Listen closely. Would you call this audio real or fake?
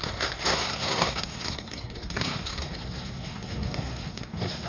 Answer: fake